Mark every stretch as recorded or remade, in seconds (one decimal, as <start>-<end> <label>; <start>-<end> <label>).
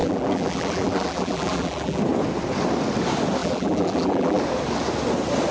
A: 0.0-2.0 remade; 2.0-3.4 recorded; 3.4-4.4 remade; 4.4-5.5 recorded